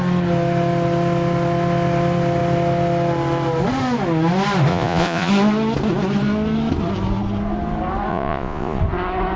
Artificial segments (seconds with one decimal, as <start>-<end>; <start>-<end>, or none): 4.7-5.3; 8.1-8.8